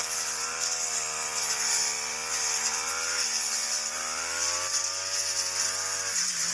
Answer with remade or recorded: recorded